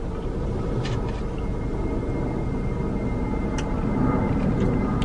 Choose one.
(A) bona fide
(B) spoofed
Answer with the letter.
A